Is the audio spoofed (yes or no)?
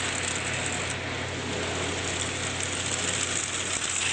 no